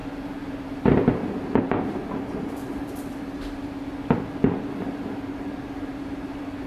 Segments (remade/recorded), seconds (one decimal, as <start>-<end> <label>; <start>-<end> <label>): 0.0-1.6 remade; 1.6-6.7 recorded